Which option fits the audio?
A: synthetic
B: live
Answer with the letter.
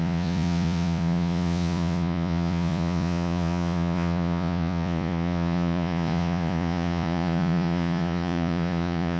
A